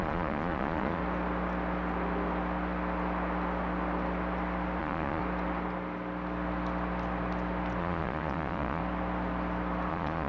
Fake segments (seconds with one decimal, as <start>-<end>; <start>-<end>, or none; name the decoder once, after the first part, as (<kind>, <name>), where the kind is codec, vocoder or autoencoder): 0.0-1.0 (vocoder, Vocos); 4.8-5.2; 7.8-8.8; 9.9-10.3